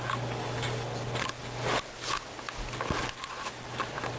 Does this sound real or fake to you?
real